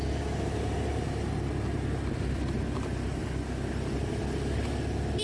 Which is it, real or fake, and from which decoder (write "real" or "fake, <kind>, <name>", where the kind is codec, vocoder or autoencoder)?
real